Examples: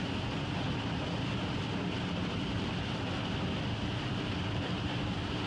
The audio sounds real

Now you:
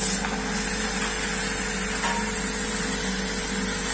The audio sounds real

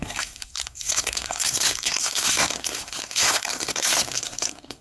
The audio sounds fake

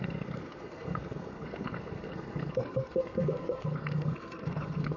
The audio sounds fake